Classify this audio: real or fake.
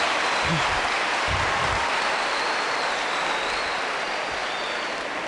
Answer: real